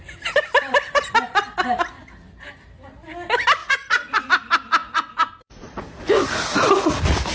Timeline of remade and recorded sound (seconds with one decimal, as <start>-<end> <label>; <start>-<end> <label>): 0.0-3.6 recorded; 3.6-4.2 remade; 4.2-4.8 recorded; 4.8-6.0 remade; 6.0-7.3 recorded